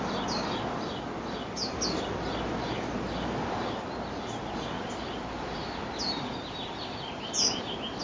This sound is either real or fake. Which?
real